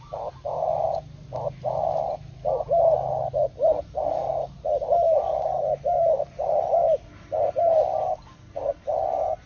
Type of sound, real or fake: real